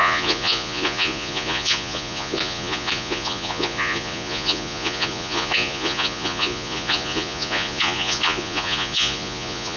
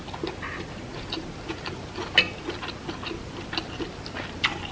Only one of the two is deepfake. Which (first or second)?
first